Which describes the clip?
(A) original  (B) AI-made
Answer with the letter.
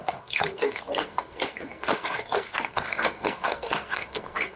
B